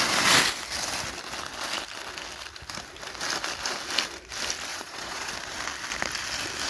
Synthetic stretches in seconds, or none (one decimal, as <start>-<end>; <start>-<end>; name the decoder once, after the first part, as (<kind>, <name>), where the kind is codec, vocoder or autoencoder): 4.7-5.3 (vocoder, Vocos)